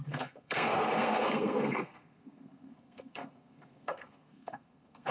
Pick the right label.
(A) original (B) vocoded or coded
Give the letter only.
B